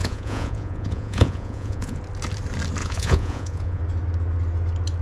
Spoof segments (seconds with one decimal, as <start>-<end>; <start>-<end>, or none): 0.0-2.0; 2.8-3.8